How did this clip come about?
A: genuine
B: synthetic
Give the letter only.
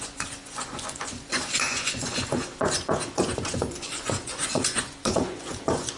B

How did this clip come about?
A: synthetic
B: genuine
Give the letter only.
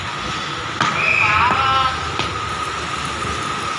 B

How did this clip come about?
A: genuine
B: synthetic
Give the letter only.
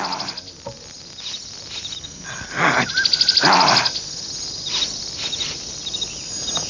A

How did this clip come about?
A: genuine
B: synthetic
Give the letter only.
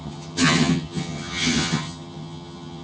B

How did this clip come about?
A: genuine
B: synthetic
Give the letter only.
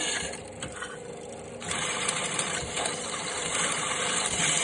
B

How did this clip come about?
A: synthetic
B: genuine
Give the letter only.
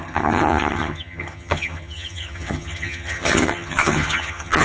A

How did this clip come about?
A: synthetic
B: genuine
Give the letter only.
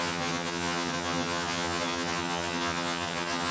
A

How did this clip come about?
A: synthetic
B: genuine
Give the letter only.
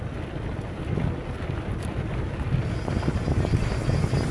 B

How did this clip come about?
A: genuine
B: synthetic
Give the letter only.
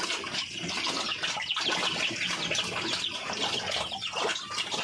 A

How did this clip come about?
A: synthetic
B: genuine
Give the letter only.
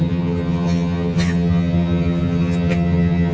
A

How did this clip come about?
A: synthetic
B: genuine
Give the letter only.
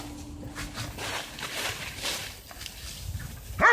B